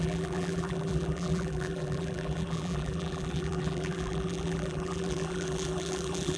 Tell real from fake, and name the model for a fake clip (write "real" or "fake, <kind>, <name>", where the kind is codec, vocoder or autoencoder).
fake, vocoder, BigVGAN v2